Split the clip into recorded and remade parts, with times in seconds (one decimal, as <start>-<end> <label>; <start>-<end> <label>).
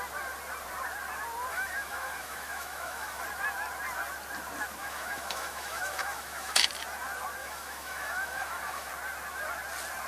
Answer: 0.0-1.5 recorded; 1.5-3.2 remade; 3.2-4.8 recorded; 4.8-6.7 remade; 6.7-7.4 recorded; 7.4-8.9 remade; 8.9-10.1 recorded